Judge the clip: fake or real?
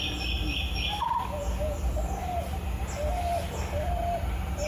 real